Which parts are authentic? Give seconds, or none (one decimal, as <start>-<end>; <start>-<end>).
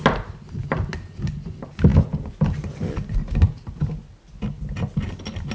0.0-5.5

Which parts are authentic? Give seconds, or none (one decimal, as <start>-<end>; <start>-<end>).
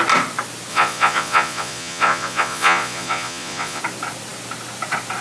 0.0-0.7; 3.8-5.2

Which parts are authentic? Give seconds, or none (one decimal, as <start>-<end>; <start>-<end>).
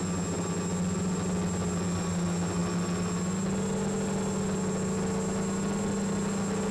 0.0-6.7